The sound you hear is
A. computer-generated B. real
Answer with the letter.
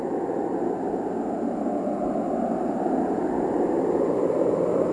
B